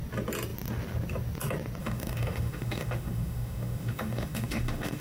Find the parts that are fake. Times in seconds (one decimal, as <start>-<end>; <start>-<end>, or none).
1.8-5.0